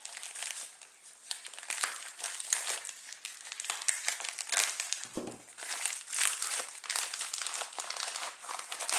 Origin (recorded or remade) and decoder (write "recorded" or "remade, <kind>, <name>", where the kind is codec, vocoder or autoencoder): recorded